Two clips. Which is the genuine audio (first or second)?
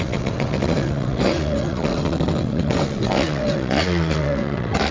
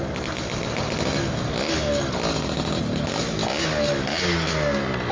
second